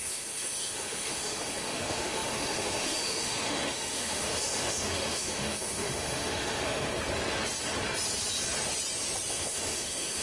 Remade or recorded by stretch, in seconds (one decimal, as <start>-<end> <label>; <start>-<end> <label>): 0.0-6.9 remade; 6.9-9.3 recorded; 9.3-10.2 remade